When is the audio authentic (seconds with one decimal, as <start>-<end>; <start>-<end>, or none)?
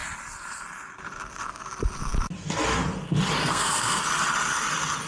0.0-3.4; 4.0-5.1